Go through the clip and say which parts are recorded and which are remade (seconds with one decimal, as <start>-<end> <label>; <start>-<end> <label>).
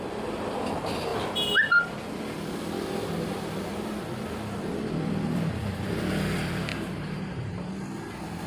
0.0-6.7 recorded; 6.7-7.7 remade; 7.7-8.5 recorded